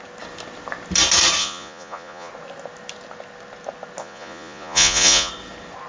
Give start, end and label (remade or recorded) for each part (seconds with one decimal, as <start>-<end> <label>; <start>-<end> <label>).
0.0-1.4 recorded; 1.4-2.3 remade; 2.3-4.0 recorded; 4.0-5.3 remade; 5.3-5.9 recorded